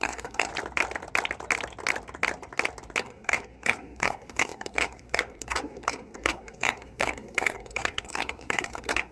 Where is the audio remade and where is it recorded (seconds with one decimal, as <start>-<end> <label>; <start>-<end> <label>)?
0.0-0.5 remade; 0.5-3.0 recorded; 3.0-9.1 remade